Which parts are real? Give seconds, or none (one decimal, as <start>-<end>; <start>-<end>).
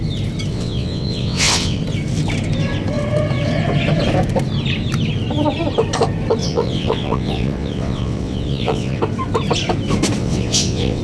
0.0-0.5; 1.8-6.4; 9.0-10.2